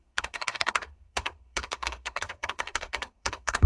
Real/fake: fake